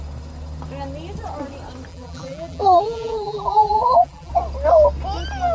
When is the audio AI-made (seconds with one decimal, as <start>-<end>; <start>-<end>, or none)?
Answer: 1.9-4.3